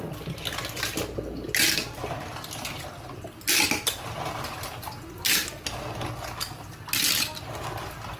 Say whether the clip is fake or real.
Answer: real